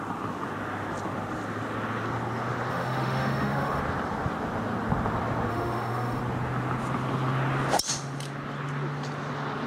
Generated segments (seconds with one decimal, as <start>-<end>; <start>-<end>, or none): 2.7-3.8; 5.5-6.2